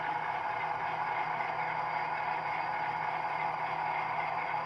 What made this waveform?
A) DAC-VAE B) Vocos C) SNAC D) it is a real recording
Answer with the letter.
D